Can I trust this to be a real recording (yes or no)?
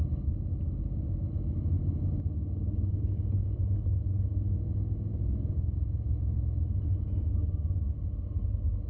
yes